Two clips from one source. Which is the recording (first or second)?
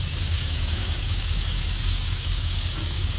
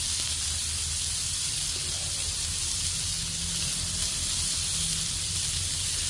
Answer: second